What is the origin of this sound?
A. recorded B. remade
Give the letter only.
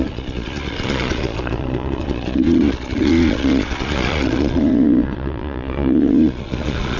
B